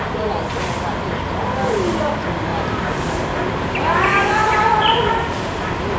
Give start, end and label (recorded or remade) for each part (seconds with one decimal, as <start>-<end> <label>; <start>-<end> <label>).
0.0-2.5 recorded; 2.5-3.2 remade; 3.2-4.4 recorded; 4.4-6.0 remade